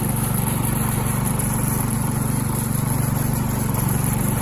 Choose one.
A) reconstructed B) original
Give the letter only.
B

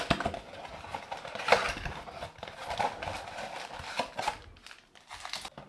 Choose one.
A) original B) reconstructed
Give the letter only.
A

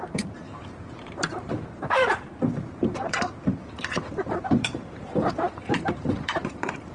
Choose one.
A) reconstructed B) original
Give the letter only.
A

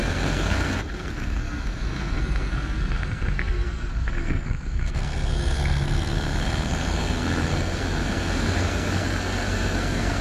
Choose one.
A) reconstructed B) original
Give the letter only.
A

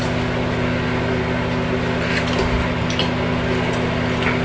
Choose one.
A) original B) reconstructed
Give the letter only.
A